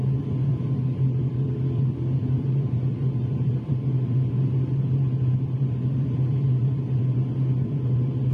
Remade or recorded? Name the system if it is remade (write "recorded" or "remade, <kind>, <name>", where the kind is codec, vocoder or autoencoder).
remade, vocoder, BigVGAN v2